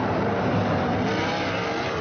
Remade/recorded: recorded